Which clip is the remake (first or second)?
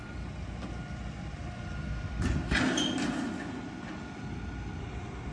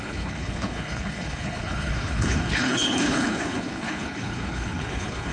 second